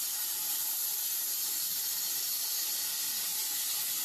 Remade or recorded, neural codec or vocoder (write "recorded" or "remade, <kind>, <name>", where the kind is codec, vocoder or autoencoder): recorded